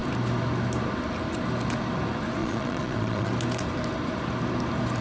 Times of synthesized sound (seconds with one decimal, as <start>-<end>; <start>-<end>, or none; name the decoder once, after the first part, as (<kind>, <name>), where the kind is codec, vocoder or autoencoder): 2.4-3.3 (vocoder, Vocos)